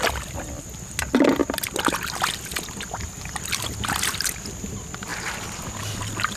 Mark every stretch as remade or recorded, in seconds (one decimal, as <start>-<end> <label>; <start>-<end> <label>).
0.0-6.4 recorded